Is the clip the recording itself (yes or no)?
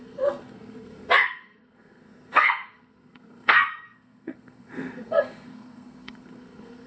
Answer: no